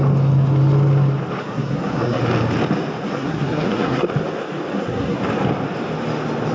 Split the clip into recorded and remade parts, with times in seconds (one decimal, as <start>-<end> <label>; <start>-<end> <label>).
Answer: 0.0-1.4 recorded; 1.4-2.2 remade; 2.2-3.0 recorded; 3.0-4.1 remade; 4.1-4.7 recorded; 4.7-5.2 remade; 5.2-6.5 recorded